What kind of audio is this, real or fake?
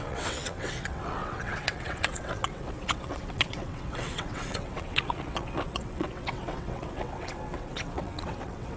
fake